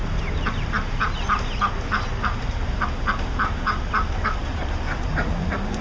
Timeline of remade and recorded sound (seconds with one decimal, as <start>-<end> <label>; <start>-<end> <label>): 0.0-4.5 recorded; 4.5-5.8 remade